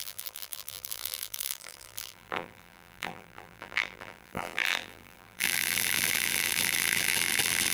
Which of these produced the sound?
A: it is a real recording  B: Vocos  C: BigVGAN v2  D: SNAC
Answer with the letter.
C